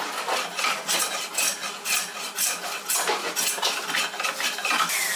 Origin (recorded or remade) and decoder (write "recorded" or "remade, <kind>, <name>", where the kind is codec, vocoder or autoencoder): recorded